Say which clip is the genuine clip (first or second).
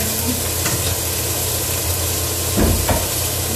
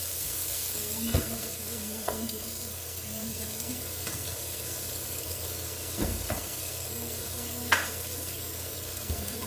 first